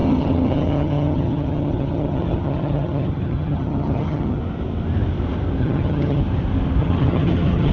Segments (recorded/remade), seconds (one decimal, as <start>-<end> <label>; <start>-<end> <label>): 0.0-4.4 remade; 4.4-5.6 recorded; 5.6-6.2 remade; 6.2-6.8 recorded; 6.8-7.7 remade